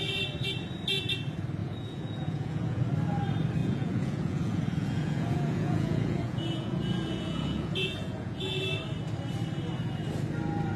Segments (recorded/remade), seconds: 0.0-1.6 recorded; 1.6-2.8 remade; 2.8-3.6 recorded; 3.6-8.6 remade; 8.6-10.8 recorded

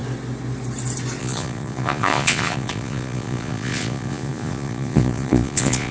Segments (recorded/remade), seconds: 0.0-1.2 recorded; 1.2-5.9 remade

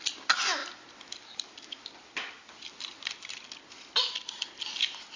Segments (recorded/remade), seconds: 0.0-5.2 recorded

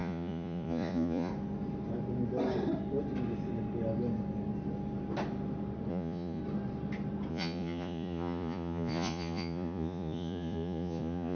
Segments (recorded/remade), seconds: 0.0-1.3 remade; 1.3-5.9 recorded; 5.9-6.4 remade; 6.4-7.3 recorded; 7.3-11.3 remade

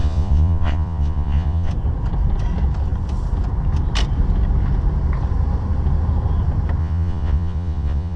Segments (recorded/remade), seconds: 0.0-1.7 remade; 1.7-6.8 recorded; 6.8-8.2 remade